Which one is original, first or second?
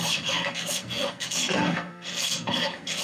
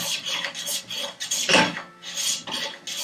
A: second